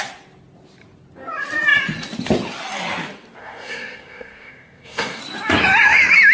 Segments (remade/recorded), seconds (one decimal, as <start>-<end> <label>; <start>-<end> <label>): 0.0-3.4 recorded; 3.4-5.2 remade; 5.2-6.3 recorded